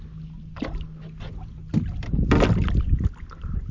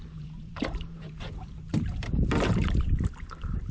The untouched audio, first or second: first